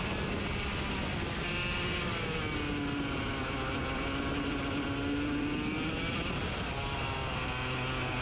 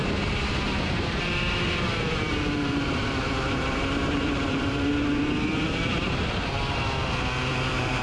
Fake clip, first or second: second